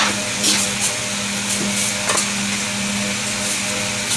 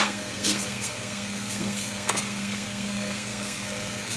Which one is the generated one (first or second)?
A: second